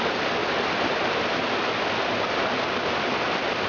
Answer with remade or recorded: recorded